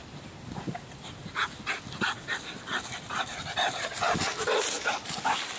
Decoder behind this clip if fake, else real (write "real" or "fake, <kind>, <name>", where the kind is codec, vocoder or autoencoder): real